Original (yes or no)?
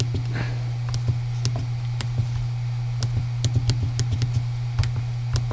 yes